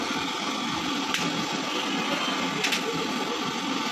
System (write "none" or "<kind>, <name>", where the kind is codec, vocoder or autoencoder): none